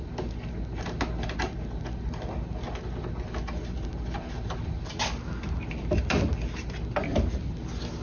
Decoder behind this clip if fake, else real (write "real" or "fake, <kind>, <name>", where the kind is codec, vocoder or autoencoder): real